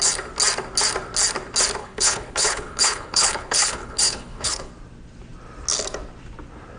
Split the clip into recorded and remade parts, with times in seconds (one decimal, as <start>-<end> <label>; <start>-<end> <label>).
0.0-1.8 recorded; 1.8-4.7 remade; 4.7-6.8 recorded